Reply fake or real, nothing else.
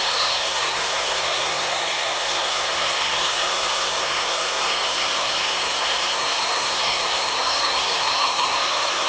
fake